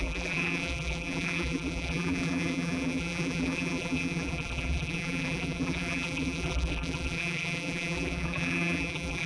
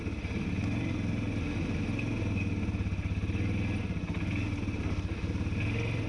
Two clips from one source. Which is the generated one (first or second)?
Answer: first